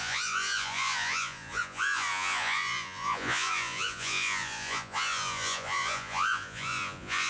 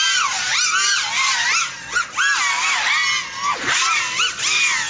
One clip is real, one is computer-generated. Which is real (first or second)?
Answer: second